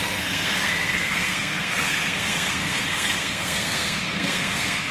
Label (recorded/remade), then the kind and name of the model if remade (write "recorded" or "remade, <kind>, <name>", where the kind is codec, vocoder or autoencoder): remade, codec, SNAC